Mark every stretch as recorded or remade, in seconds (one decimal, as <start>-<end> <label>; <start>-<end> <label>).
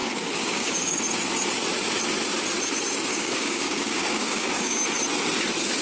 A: 0.0-1.0 remade; 1.0-3.1 recorded; 3.1-4.8 remade; 4.8-5.8 recorded